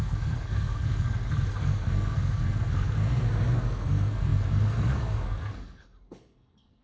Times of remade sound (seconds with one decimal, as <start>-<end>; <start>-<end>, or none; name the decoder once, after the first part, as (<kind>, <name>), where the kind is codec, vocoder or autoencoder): 0.0-6.8 (codec, SNAC)